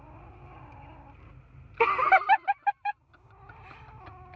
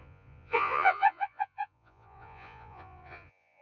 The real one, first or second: first